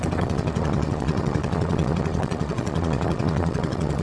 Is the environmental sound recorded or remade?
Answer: remade